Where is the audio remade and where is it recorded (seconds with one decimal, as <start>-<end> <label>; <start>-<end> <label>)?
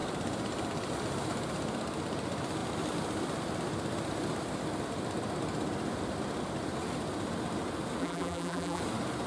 0.0-8.0 recorded; 8.0-8.8 remade; 8.8-9.3 recorded